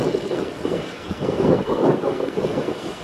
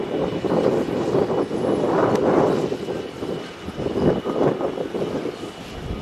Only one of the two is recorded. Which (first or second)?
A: second